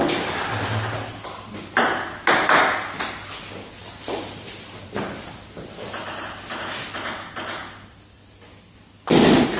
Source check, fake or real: real